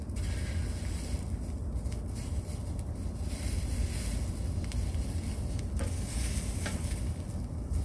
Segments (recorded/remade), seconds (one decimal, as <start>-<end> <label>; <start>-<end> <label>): 0.0-7.8 recorded